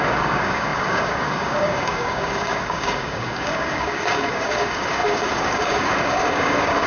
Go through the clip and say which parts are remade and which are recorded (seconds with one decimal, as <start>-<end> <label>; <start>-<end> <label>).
0.0-6.9 remade